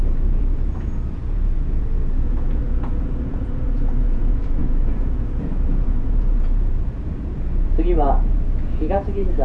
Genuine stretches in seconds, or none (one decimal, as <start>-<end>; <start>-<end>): none